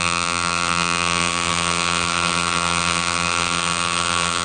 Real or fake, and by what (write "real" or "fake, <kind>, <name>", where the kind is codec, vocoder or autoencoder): fake, vocoder, BigVGAN v2